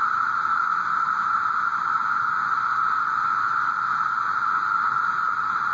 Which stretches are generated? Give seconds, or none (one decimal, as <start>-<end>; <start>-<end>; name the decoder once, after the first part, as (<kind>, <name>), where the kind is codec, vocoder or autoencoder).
2.0-5.7 (vocoder, Vocos)